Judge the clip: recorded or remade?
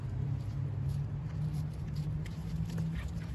remade